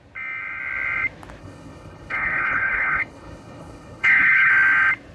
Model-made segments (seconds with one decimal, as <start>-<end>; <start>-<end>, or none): 1.4-4.5